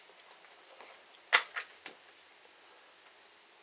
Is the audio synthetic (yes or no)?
no